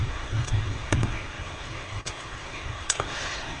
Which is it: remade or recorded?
remade